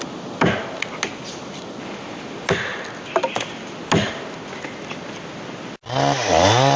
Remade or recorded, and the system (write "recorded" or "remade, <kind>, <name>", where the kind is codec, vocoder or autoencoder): recorded